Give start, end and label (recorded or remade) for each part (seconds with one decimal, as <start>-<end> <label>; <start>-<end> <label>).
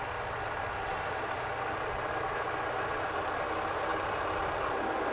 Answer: 0.0-5.1 recorded